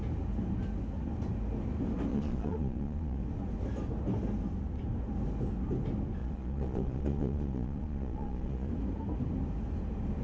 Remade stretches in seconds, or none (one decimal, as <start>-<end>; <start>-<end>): 2.1-3.2; 6.2-8.7